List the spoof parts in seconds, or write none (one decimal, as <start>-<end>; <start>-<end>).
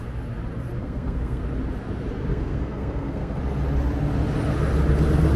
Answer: 0.8-1.4; 2.3-3.4